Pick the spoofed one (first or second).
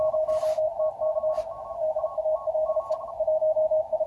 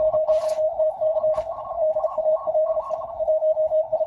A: second